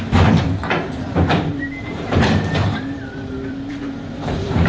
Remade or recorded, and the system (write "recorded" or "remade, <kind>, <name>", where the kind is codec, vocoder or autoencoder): remade, vocoder, BigVGAN v2